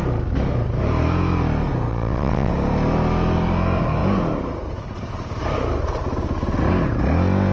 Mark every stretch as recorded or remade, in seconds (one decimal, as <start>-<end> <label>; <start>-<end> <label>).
0.0-1.9 recorded; 1.9-2.5 remade; 2.5-7.5 recorded